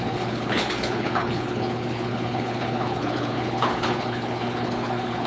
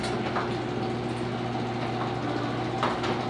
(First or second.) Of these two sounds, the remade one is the first